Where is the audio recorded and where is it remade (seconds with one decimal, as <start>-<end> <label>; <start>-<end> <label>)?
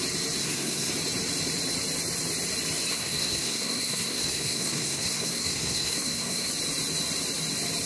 0.0-0.4 recorded; 0.4-0.9 remade; 0.9-2.9 recorded; 2.9-6.5 remade; 6.5-7.9 recorded